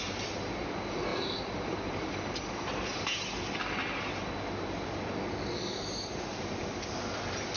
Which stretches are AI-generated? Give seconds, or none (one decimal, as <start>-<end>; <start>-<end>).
1.1-4.4